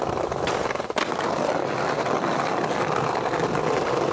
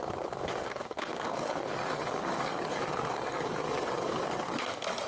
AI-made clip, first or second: second